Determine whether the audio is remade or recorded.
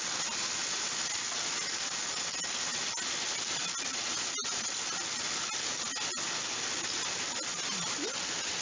recorded